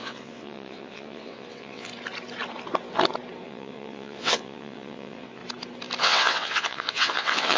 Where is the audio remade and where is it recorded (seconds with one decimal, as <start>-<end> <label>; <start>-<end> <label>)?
0.0-1.9 remade; 1.9-3.4 recorded; 3.4-5.4 remade; 5.4-6.0 recorded; 6.0-7.6 remade